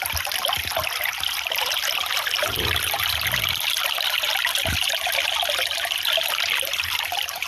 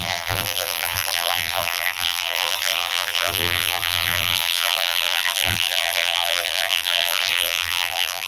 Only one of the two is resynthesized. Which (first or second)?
second